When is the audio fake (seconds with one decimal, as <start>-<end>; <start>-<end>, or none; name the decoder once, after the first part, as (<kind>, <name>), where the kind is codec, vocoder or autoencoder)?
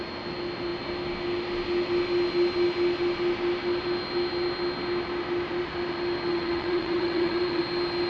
6.3-7.6 (vocoder, WaveNeXt)